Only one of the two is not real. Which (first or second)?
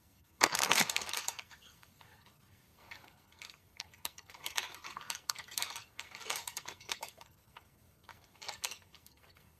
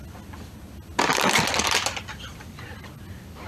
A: first